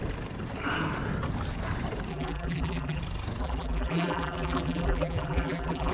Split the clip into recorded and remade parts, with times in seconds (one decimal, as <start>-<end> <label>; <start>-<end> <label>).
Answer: 0.0-2.1 recorded; 2.1-3.0 remade; 3.0-3.4 recorded; 3.4-5.9 remade